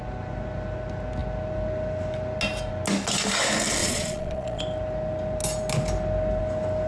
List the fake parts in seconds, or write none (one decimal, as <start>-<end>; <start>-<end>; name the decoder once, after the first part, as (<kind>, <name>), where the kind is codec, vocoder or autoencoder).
3.8-4.6 (vocoder, Vocos)